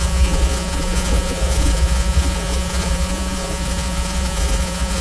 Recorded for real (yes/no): no